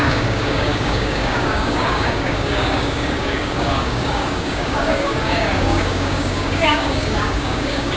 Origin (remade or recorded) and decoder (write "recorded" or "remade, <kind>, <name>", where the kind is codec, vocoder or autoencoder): remade, codec, DAC